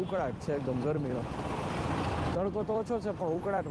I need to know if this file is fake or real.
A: fake